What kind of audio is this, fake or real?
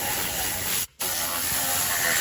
real